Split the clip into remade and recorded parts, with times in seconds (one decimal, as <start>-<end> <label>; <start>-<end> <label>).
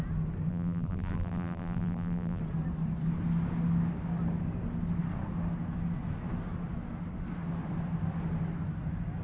0.0-0.5 recorded; 0.5-2.4 remade; 2.4-9.2 recorded